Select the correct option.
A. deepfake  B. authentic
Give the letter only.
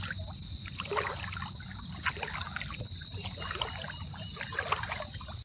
B